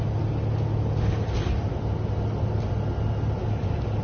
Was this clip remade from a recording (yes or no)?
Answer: no